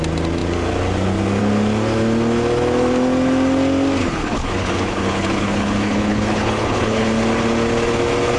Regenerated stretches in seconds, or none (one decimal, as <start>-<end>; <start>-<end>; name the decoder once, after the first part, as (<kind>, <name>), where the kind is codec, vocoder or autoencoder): 4.0-7.1 (codec, HILCodec)